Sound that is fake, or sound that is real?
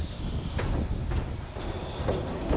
real